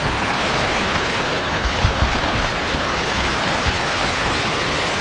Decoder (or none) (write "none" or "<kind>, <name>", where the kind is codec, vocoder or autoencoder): codec, HILCodec